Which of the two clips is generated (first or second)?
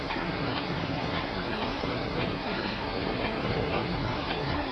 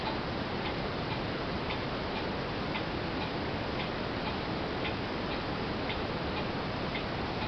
first